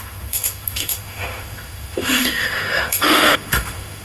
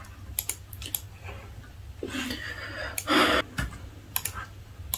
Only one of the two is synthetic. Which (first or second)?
first